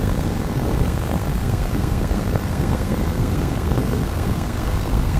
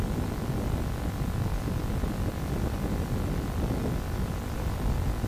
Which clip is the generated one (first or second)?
first